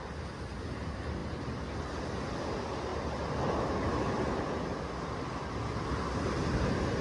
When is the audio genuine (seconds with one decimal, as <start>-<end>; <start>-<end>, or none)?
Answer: 0.0-7.0